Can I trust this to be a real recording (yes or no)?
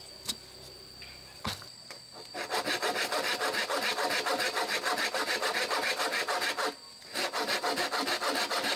yes